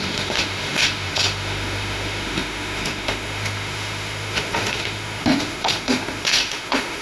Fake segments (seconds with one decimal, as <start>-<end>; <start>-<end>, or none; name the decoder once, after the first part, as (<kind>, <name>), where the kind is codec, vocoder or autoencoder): 0.0-7.0 (autoencoder, DAC-VAE)